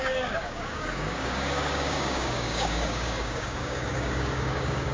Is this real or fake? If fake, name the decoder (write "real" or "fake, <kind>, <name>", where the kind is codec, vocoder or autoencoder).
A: fake, codec, DAC